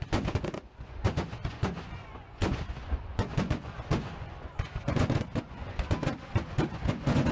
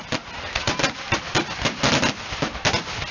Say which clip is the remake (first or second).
first